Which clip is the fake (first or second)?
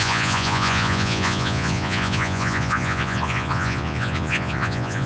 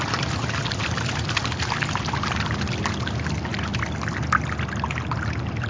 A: first